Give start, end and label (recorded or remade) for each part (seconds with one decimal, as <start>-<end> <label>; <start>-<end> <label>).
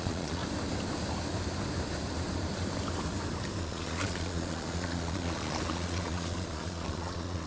0.0-0.4 remade; 0.4-3.6 recorded; 3.6-7.5 remade